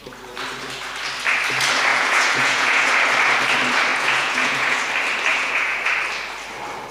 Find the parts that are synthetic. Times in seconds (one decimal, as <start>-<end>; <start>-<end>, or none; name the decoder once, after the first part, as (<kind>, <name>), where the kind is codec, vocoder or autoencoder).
1.9-3.0 (vocoder, Vocos); 3.9-4.8; 5.3-5.9